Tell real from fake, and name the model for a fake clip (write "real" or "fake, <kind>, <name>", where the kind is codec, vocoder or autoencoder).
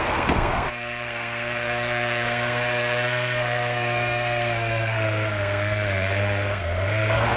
fake, codec, SNAC